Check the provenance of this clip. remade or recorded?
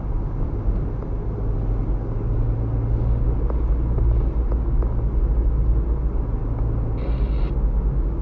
recorded